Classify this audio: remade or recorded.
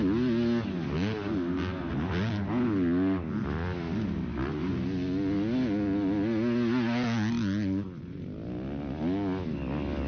recorded